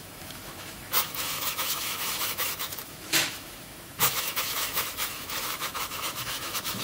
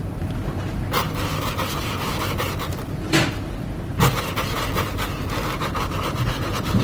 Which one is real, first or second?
second